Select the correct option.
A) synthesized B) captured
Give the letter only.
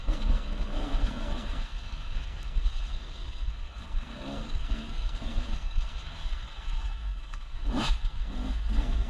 A